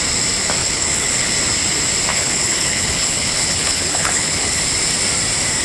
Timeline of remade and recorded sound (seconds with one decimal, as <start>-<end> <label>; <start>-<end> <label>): 0.0-0.6 recorded; 0.6-1.3 remade; 1.3-2.1 recorded; 2.1-4.6 remade; 4.6-5.6 recorded